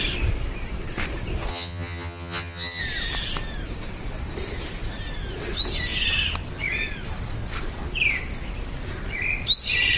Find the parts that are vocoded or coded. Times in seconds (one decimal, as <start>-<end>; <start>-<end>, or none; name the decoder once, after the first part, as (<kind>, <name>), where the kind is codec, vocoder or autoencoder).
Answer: 1.5-2.8 (vocoder, HiFi-GAN)